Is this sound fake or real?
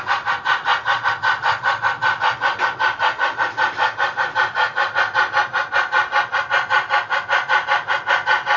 real